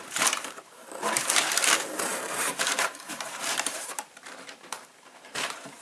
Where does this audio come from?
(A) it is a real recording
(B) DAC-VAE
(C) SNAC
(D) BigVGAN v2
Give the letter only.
D